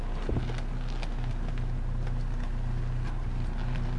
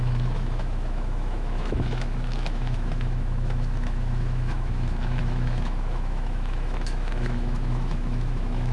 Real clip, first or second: first